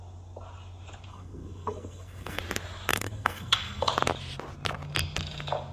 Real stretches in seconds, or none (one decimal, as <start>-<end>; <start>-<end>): 0.0-1.1; 2.4-2.9; 3.9-5.7